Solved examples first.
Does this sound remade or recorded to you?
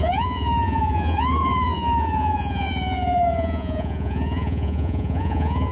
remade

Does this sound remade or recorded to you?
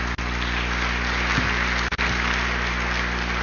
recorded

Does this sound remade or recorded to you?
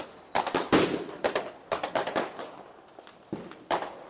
recorded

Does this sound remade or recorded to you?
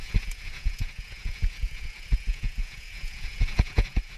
remade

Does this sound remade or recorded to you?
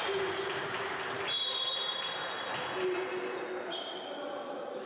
recorded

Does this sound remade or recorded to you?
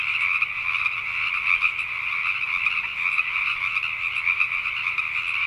recorded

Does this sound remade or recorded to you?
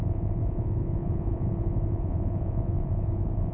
remade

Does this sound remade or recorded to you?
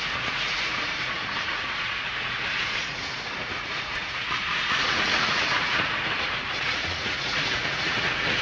remade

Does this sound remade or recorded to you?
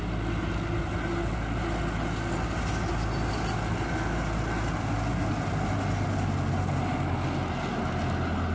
recorded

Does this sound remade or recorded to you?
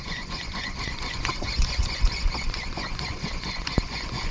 remade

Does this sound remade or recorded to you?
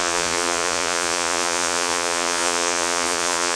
remade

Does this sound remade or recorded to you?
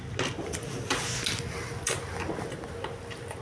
recorded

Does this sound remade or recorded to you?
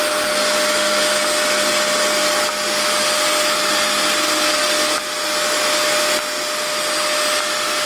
recorded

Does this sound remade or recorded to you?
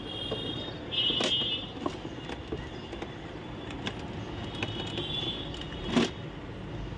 recorded